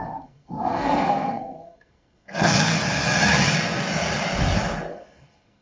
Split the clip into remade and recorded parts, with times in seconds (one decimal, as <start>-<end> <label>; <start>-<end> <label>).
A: 0.0-2.8 remade; 2.8-4.9 recorded; 4.9-5.6 remade